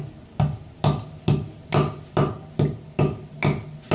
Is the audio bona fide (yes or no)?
yes